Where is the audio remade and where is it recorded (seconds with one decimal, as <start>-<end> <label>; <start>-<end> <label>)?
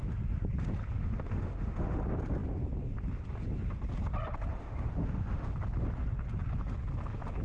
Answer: 0.0-1.0 recorded; 1.0-2.0 remade; 2.0-4.5 recorded; 4.5-5.5 remade; 5.5-7.4 recorded